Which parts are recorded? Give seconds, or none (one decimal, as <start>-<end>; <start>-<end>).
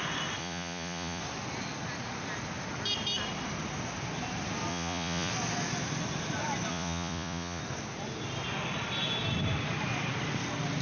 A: 0.0-0.4; 1.2-4.7; 5.3-6.7; 7.6-10.8